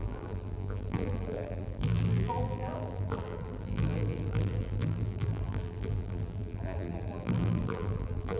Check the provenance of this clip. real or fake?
fake